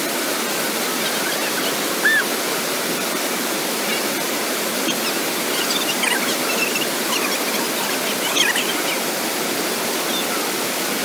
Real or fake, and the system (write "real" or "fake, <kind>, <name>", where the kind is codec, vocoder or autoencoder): real